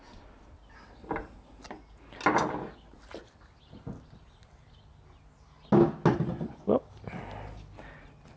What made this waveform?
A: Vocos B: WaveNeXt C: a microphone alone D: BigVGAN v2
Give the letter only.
C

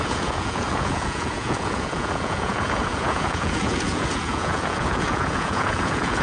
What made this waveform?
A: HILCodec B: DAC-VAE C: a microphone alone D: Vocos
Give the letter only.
D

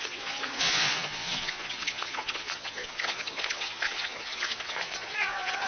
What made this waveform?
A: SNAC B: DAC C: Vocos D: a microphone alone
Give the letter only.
C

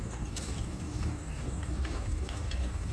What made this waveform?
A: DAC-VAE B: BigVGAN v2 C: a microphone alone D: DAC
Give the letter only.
D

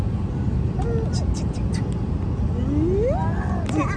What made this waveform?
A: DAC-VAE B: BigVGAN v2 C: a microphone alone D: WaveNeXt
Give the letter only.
C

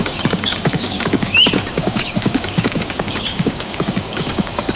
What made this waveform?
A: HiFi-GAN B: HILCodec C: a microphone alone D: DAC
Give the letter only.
D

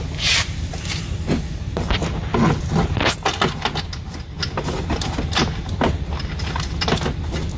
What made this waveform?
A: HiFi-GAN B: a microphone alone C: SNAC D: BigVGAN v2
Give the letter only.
B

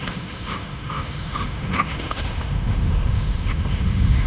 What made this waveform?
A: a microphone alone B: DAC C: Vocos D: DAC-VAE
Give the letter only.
D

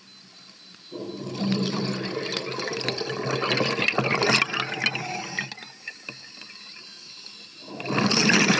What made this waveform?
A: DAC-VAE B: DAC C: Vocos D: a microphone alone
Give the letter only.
D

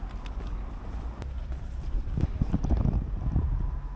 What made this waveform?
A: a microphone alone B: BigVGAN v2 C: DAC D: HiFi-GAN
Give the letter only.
A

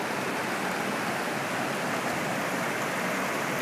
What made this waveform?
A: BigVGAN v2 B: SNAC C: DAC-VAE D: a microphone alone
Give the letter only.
D